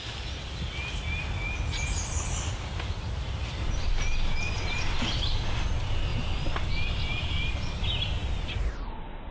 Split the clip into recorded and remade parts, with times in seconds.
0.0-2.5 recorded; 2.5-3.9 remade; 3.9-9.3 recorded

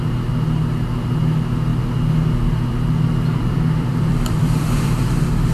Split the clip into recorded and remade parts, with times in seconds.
0.0-3.4 recorded; 3.4-5.5 remade

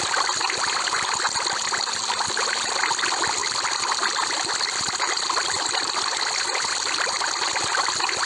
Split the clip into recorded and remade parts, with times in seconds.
0.0-8.3 remade

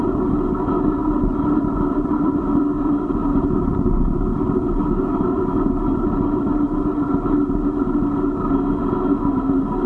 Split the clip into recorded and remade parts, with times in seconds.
0.0-1.0 recorded; 1.0-3.7 remade; 3.7-9.9 recorded

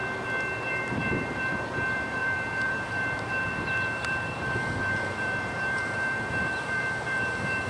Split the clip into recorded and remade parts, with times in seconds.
0.0-0.7 recorded; 0.7-7.7 remade

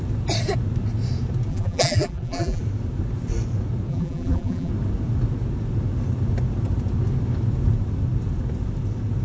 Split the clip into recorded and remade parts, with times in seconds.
0.0-1.5 recorded; 1.5-2.6 remade; 2.6-3.9 recorded; 3.9-4.7 remade; 4.7-9.2 recorded